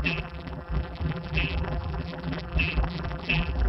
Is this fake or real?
fake